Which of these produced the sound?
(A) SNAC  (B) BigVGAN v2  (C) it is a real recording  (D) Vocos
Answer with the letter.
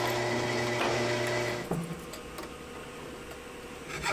C